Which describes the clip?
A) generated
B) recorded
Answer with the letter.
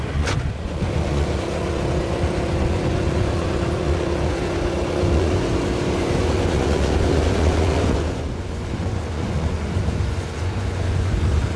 A